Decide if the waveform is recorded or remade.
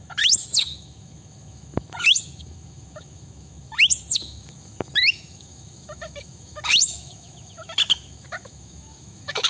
remade